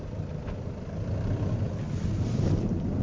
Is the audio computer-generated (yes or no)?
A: no